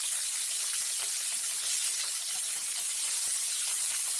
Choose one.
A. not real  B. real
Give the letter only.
B